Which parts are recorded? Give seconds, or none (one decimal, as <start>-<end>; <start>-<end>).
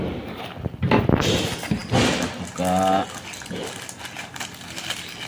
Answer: 0.0-5.3